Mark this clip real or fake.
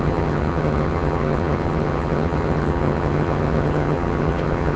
fake